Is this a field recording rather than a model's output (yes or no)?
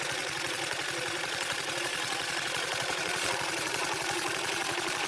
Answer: no